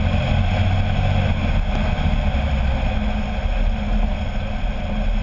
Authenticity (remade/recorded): recorded